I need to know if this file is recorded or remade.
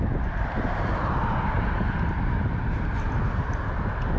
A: recorded